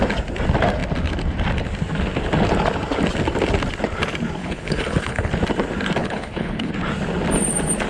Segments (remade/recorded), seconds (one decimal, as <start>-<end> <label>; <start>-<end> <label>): 0.0-4.4 recorded; 4.4-5.3 remade; 5.3-6.0 recorded; 6.0-6.7 remade; 6.7-7.9 recorded